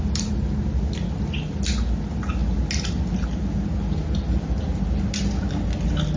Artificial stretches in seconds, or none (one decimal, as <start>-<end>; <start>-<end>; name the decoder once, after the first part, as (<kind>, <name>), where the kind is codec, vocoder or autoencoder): none